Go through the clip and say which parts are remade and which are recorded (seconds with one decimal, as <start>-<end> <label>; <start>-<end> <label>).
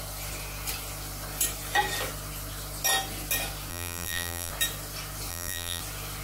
0.0-3.7 recorded; 3.7-4.5 remade; 4.5-5.3 recorded; 5.3-5.8 remade; 5.8-6.2 recorded